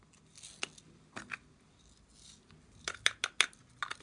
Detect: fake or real real